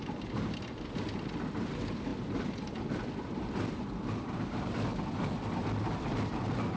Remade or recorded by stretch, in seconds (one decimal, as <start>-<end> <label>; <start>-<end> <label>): 0.0-2.1 recorded; 2.1-6.2 remade; 6.2-6.8 recorded